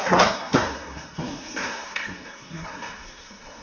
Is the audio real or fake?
fake